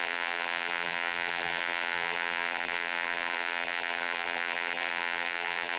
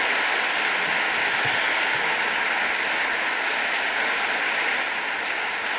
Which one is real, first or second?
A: second